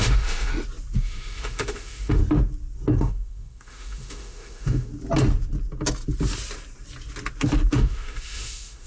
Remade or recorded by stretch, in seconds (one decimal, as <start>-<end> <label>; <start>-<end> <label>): 0.0-0.5 remade; 0.5-1.0 recorded; 1.0-2.2 remade; 2.2-3.0 recorded; 3.0-4.9 remade; 4.9-7.7 recorded; 7.7-8.9 remade